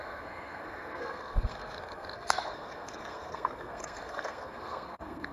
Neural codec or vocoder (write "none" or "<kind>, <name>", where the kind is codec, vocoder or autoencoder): codec, SNAC